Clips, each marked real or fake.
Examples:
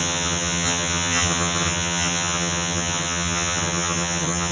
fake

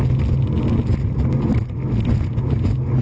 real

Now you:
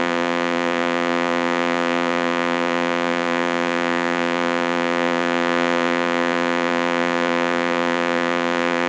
fake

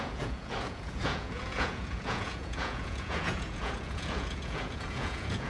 fake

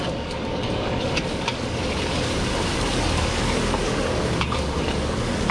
fake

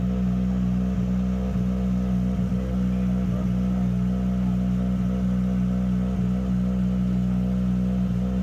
real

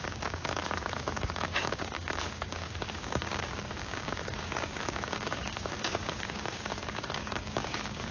fake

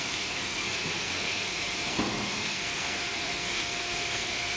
fake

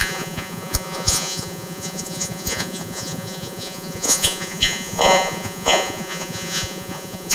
fake